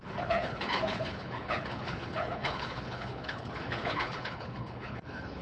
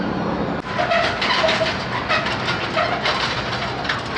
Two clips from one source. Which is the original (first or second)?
second